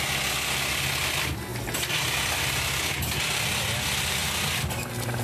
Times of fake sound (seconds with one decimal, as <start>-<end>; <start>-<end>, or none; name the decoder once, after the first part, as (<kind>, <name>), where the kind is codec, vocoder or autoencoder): none